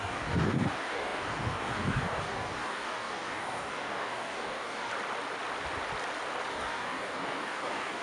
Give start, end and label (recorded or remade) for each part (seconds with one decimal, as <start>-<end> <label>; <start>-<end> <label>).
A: 0.0-4.9 remade; 4.9-6.5 recorded; 6.5-8.0 remade